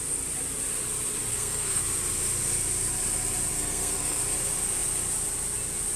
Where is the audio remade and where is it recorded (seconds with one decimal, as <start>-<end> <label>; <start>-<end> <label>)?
0.0-1.3 recorded; 1.3-1.8 remade; 1.8-3.5 recorded; 3.5-4.2 remade; 4.2-6.0 recorded